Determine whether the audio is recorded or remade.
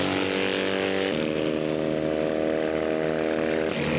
recorded